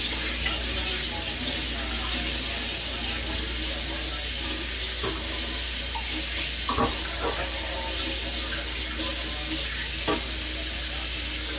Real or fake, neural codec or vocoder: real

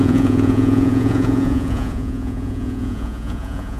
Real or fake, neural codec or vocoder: fake, vocoder, Vocos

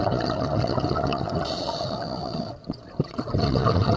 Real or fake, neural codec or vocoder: fake, vocoder, Vocos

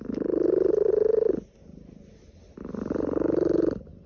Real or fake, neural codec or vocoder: real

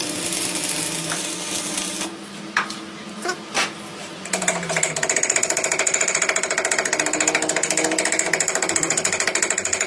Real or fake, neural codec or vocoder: real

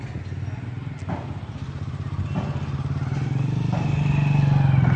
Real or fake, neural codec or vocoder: real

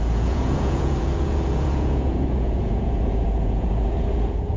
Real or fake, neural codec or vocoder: fake, vocoder, Vocos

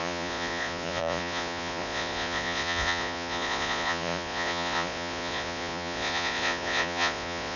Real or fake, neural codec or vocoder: fake, vocoder, Vocos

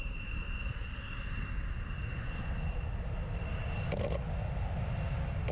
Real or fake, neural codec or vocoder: real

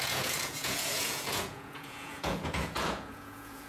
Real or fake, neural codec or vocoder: fake, vocoder, Vocos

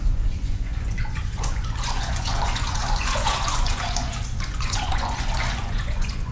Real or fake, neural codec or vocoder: fake, vocoder, Vocos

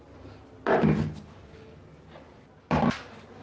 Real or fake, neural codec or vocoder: real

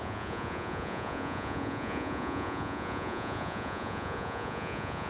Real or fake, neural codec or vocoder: fake, vocoder, Vocos